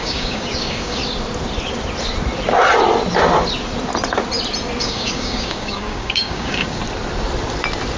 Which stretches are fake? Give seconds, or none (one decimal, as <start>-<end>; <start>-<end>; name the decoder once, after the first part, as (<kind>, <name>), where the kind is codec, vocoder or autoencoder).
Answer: 0.0-1.0 (codec, DAC); 4.8-6.8